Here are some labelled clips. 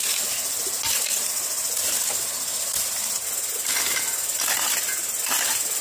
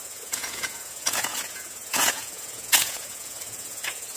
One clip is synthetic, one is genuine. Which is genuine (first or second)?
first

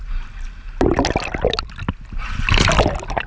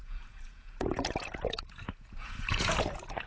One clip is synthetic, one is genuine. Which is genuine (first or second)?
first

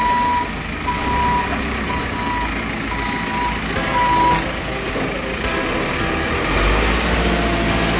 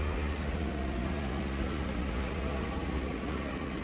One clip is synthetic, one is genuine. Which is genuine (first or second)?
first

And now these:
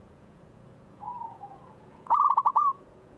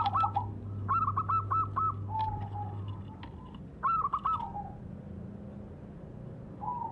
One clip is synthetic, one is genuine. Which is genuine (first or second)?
second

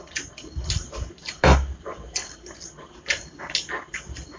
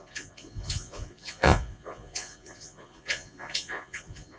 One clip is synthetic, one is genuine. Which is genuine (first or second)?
first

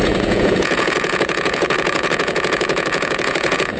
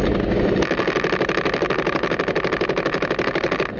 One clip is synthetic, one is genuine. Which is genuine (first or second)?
second